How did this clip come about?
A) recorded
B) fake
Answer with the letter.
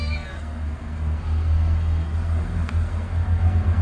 B